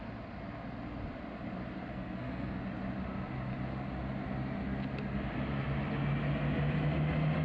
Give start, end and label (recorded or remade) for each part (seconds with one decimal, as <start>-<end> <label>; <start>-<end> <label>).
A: 0.0-1.9 recorded; 1.9-2.6 remade; 2.6-7.4 recorded